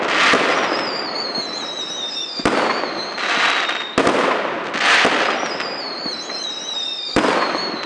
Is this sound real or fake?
real